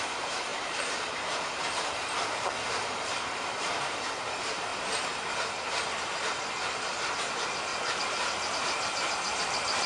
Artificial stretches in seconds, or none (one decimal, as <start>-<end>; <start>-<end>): 0.0-4.7; 7.3-7.7; 8.5-9.9